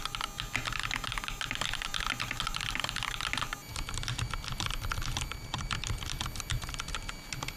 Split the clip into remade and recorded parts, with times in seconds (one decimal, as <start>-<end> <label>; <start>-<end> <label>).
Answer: 0.0-3.7 recorded; 3.7-7.1 remade; 7.1-7.6 recorded